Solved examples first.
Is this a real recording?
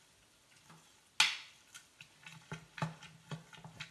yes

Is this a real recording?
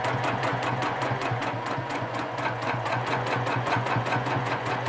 no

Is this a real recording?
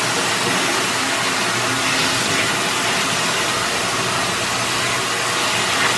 yes